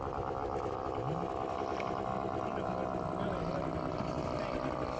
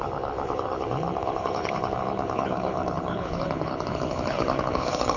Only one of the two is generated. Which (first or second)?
second